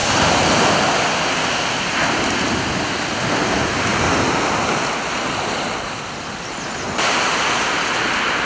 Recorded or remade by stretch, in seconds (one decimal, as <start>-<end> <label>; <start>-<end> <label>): 0.0-8.5 recorded